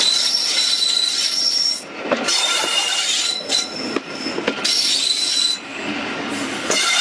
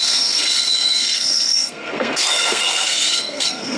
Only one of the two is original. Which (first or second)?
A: first